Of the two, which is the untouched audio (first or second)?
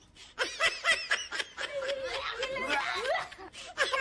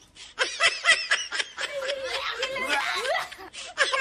first